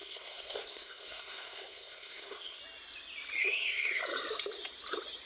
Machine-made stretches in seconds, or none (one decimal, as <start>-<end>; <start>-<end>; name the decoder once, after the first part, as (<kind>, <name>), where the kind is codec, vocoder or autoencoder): 0.0-2.6 (codec, SNAC); 3.4-4.0